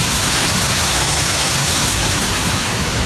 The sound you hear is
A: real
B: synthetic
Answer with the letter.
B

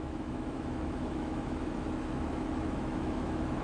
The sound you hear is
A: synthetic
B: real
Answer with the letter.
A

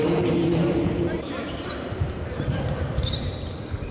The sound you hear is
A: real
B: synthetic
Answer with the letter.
B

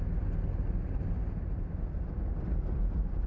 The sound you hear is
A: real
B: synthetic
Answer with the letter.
A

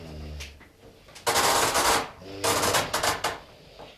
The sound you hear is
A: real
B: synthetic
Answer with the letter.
A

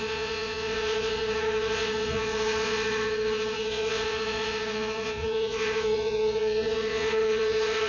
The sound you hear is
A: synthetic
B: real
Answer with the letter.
A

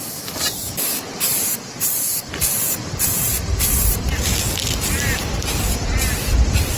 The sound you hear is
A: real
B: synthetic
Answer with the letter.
A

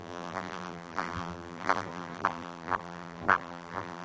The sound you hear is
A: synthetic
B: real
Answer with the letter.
A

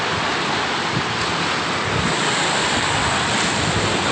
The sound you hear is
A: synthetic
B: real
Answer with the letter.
B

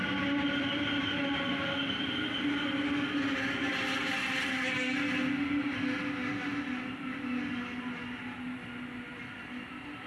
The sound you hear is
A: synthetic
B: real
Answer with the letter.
B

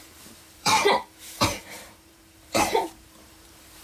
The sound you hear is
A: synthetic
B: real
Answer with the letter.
A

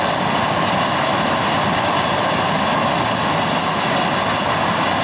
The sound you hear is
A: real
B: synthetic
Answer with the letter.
A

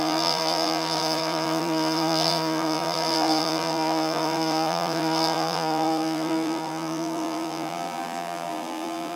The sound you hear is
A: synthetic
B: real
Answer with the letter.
A